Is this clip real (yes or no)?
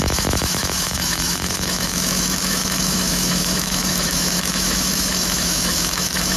no